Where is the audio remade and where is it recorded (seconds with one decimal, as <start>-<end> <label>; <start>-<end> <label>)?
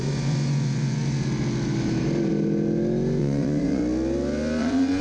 0.0-1.0 remade; 1.0-3.2 recorded; 3.2-3.8 remade; 3.8-4.6 recorded; 4.6-5.0 remade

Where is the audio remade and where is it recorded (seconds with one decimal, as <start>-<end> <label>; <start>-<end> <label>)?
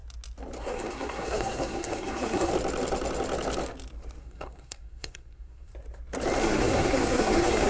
0.0-0.6 recorded; 0.6-2.5 remade; 2.5-4.2 recorded; 4.2-5.7 remade; 5.7-6.4 recorded; 6.4-7.7 remade